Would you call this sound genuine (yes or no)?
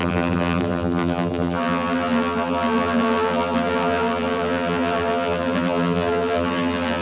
no